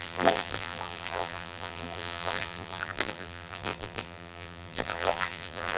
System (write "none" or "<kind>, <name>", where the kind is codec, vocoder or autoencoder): vocoder, BigVGAN v2